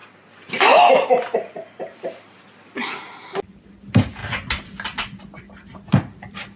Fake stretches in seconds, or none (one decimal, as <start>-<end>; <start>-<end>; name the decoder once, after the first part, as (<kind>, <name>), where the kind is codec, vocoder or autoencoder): 0.0-2.4 (vocoder, BigVGAN v2)